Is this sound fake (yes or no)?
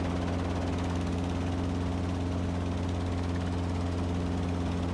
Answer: no